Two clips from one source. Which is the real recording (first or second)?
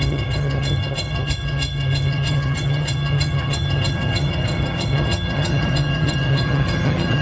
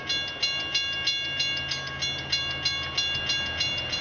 second